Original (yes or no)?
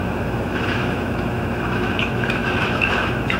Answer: no